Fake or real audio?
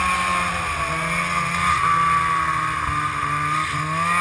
real